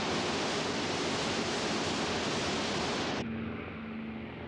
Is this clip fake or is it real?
real